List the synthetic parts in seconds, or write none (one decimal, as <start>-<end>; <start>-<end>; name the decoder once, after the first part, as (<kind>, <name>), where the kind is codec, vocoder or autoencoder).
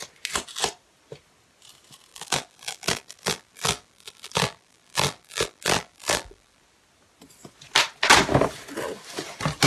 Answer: 2.1-6.6 (vocoder, BigVGAN v2)